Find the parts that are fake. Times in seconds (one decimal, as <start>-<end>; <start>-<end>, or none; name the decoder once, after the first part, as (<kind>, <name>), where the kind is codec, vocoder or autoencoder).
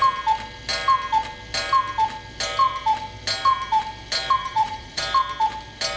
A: 4.4-5.0 (vocoder, Vocos)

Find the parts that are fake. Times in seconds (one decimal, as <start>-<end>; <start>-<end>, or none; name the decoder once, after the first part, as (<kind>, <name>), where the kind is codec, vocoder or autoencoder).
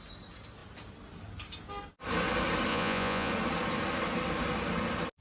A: 2.7-3.3 (vocoder, Vocos)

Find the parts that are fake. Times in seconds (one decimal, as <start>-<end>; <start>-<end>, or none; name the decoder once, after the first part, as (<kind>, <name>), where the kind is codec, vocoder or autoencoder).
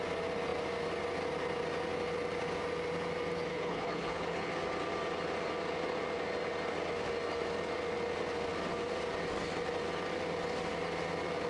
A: 3.5-4.5 (codec, HILCodec)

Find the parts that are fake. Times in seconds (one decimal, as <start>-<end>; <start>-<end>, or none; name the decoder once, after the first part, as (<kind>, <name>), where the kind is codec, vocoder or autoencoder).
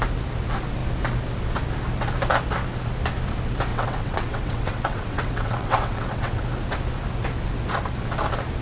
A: 3.7-6.4 (vocoder, WaveNeXt)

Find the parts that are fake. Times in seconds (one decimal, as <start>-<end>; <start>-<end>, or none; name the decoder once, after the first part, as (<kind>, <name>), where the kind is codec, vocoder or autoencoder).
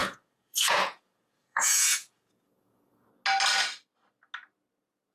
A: 0.0-3.1 (vocoder, Vocos)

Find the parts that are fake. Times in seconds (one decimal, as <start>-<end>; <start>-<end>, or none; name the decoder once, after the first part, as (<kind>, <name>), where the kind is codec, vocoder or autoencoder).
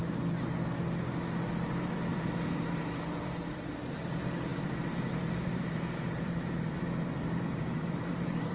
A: 1.6-8.5 (vocoder, BigVGAN v2)